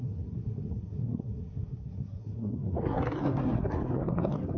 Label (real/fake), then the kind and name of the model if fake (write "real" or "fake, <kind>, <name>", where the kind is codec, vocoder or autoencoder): fake, codec, SNAC